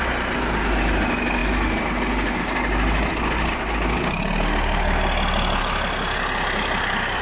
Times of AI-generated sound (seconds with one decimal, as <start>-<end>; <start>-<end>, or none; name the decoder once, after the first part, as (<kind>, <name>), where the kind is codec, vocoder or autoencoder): none